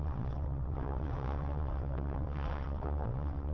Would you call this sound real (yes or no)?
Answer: no